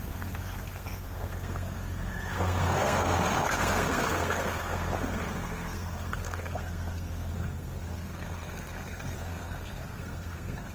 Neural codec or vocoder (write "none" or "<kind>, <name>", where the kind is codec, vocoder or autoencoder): codec, SNAC